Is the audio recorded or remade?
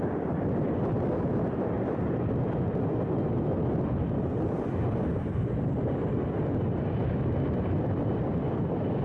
recorded